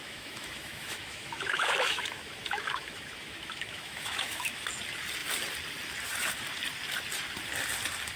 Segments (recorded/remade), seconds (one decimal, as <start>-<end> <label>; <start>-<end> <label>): 0.0-4.7 remade; 4.7-8.2 recorded